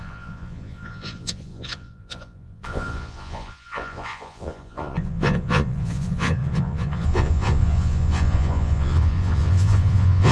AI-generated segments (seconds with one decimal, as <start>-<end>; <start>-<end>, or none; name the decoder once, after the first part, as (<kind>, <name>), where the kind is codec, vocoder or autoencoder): 0.0-10.3 (vocoder, Vocos)